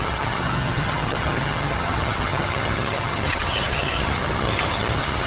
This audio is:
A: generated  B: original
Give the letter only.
A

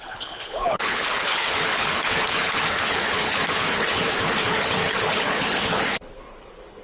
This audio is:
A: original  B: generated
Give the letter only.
B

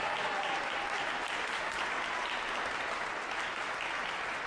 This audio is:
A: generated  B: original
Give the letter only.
B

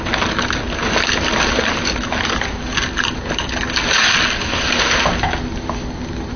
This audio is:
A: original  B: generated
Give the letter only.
A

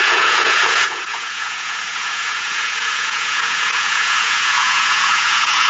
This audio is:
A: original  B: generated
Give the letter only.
B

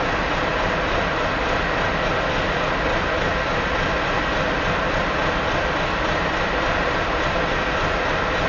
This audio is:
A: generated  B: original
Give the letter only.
B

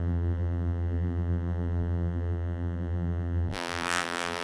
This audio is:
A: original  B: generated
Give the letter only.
B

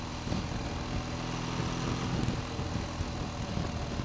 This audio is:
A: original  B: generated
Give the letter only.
A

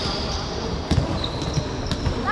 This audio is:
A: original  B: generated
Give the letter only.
A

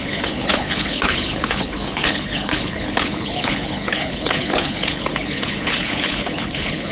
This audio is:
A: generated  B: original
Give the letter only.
A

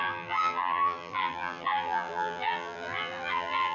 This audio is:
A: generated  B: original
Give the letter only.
A